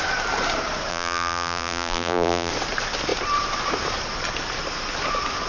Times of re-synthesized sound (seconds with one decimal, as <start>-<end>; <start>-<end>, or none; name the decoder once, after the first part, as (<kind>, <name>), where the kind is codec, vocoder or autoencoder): 0.9-2.5 (vocoder, BigVGAN v2)